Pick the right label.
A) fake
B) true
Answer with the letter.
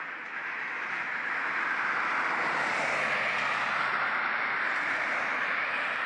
B